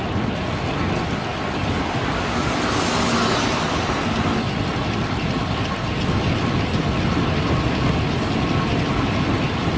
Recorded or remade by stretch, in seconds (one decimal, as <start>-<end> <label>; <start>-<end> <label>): 0.0-9.8 recorded